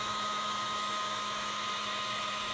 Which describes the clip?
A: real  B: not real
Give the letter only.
B